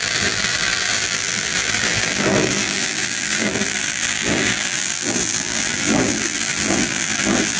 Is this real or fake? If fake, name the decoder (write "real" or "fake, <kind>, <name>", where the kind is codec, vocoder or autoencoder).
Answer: fake, vocoder, BigVGAN v2